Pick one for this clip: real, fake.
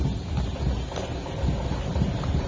real